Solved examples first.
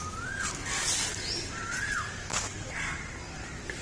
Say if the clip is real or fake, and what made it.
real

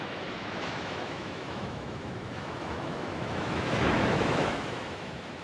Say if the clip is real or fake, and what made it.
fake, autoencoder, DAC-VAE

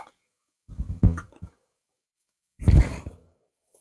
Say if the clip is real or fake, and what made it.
fake, codec, DAC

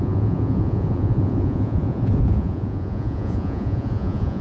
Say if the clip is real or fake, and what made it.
fake, vocoder, Vocos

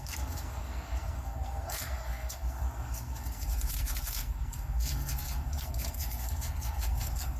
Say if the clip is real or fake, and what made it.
fake, codec, SNAC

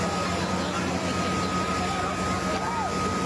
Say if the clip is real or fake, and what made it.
real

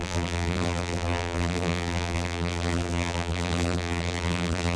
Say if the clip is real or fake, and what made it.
fake, vocoder, BigVGAN v2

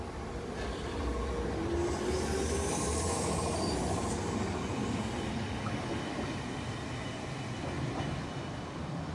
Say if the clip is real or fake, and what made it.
real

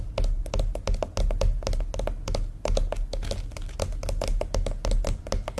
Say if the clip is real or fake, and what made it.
real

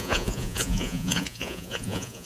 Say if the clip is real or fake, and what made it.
fake, vocoder, Vocos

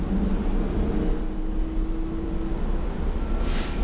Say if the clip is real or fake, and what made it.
real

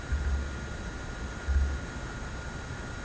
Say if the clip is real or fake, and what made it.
real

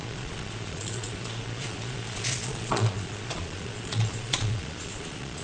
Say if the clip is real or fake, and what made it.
fake, vocoder, Vocos